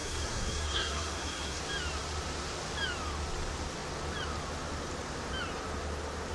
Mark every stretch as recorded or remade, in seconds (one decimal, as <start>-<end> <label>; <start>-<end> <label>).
0.0-1.6 remade; 1.6-6.3 recorded

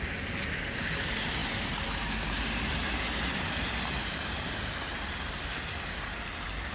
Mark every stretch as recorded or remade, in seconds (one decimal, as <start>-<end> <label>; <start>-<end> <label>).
0.0-6.7 recorded

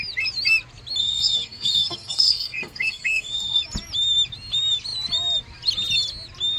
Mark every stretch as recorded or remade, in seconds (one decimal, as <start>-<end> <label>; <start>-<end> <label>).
0.0-1.0 recorded; 1.0-3.6 remade; 3.6-6.6 recorded

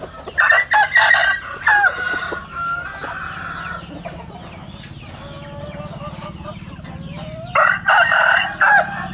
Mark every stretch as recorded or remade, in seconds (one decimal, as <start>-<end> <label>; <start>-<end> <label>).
0.0-9.1 recorded

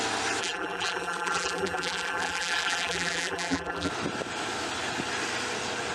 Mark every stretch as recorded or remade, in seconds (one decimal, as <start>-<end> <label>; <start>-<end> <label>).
0.0-0.4 recorded; 0.4-3.9 remade; 3.9-5.9 recorded

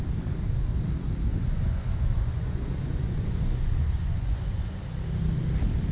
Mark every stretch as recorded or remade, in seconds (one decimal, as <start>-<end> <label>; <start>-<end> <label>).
0.0-1.3 recorded; 1.3-4.8 remade; 4.8-5.9 recorded

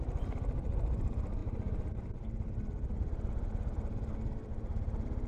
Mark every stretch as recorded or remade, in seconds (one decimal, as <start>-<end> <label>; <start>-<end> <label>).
0.0-5.3 recorded

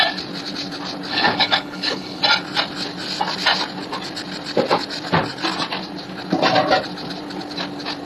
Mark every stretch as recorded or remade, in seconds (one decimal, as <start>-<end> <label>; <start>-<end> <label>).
0.0-1.1 recorded; 1.1-2.2 remade; 2.2-8.1 recorded